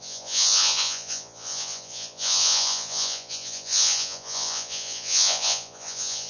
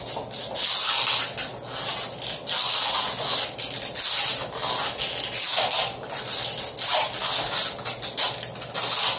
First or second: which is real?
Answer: second